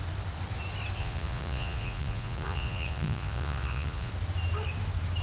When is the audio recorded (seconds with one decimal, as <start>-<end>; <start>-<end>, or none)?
0.0-1.0; 4.1-5.2